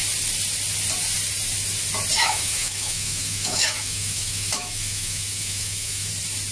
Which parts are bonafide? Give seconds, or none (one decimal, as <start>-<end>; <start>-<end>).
0.0-2.2; 6.1-6.5